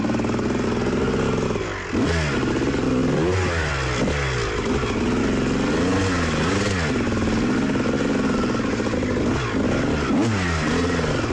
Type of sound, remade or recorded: recorded